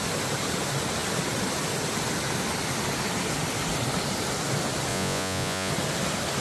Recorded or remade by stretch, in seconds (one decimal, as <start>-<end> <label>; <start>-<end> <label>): 0.0-4.9 recorded; 4.9-5.7 remade; 5.7-6.4 recorded